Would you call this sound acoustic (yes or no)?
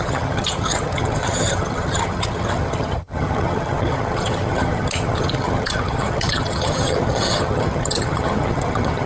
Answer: no